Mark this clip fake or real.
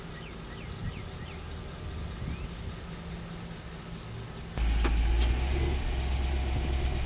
real